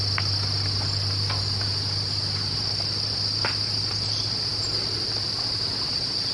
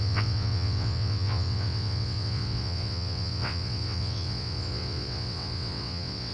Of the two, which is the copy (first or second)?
second